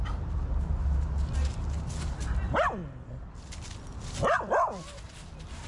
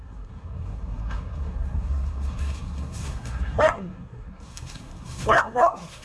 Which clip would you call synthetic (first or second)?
second